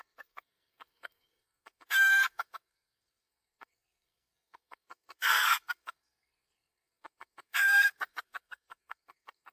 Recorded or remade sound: remade